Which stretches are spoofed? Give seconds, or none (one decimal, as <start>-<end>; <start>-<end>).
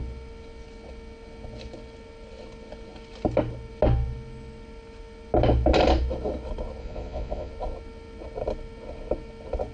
6.8-7.5